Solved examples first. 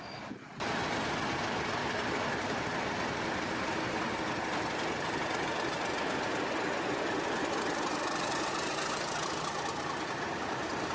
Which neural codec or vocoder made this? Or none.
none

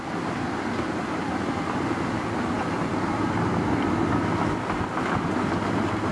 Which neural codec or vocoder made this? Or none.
none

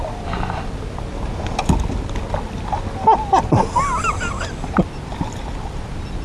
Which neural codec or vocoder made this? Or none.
none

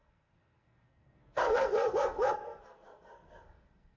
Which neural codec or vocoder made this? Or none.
codec, SNAC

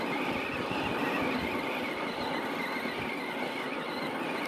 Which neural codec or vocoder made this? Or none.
none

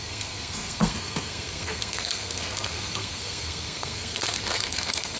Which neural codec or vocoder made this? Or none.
codec, SNAC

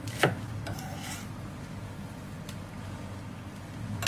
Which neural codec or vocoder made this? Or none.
none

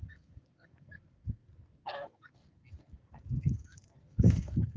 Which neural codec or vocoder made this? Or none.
codec, SNAC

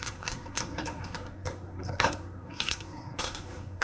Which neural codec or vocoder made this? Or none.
codec, SNAC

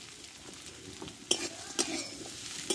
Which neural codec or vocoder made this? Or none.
none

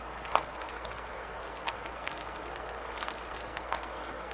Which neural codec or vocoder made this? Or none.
codec, SNAC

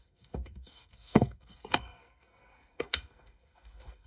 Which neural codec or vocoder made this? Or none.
codec, SNAC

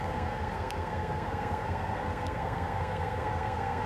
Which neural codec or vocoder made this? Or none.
codec, SNAC